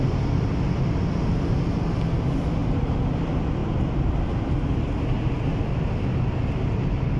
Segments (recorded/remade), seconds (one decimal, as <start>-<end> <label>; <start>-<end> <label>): 0.0-7.2 recorded